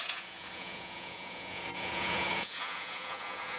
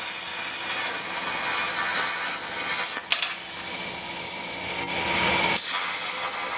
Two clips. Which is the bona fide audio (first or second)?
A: second